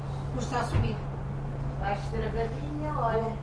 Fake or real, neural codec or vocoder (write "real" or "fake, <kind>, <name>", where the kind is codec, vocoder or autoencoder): real